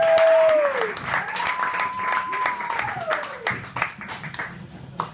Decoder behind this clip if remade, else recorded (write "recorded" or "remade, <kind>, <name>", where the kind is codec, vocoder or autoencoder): recorded